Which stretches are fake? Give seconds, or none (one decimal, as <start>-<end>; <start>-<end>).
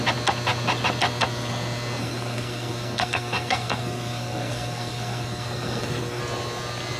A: 2.0-6.2